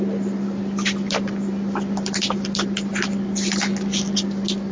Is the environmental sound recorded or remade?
recorded